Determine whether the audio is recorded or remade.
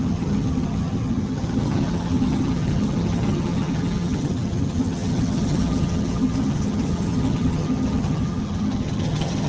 remade